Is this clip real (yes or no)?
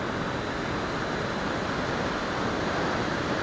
yes